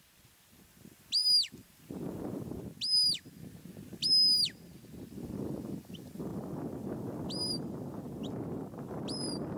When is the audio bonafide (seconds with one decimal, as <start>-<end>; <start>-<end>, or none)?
0.0-9.6

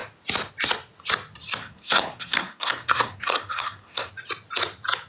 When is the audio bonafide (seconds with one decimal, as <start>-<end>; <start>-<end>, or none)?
0.0-1.6; 4.1-5.1

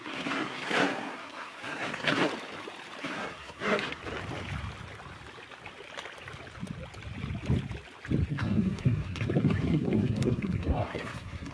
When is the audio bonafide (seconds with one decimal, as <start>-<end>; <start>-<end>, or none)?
2.3-3.0; 4.0-8.3

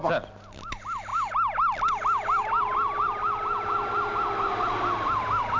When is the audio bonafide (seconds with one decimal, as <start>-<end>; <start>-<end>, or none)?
0.0-5.6

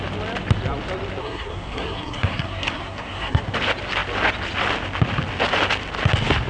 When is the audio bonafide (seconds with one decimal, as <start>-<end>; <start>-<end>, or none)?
0.0-1.2; 3.4-6.5